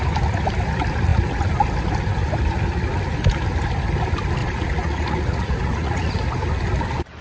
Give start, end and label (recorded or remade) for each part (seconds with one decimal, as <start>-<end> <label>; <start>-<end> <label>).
0.0-4.4 recorded; 4.4-6.1 remade; 6.1-7.2 recorded